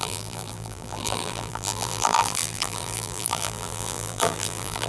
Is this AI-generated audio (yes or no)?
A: yes